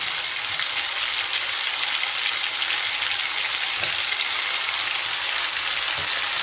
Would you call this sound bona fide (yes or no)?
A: yes